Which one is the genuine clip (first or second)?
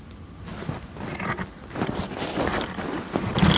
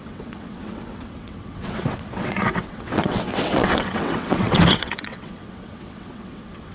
first